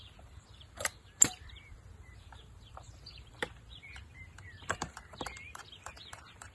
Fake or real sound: fake